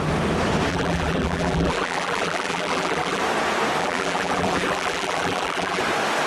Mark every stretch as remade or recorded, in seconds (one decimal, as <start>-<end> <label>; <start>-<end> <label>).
0.0-0.7 recorded; 0.7-3.2 remade; 3.2-3.8 recorded; 3.8-5.8 remade; 5.8-6.3 recorded